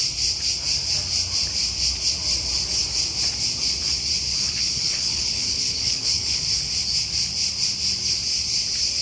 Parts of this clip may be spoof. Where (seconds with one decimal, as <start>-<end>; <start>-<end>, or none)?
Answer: 4.3-6.4